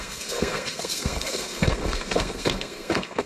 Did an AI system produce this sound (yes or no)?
yes